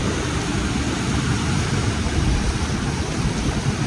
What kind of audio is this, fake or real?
real